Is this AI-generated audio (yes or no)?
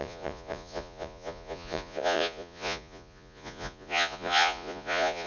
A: yes